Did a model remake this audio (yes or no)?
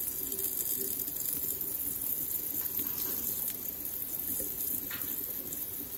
no